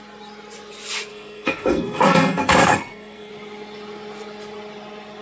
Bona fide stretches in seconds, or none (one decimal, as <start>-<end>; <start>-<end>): 0.0-1.1; 3.3-5.2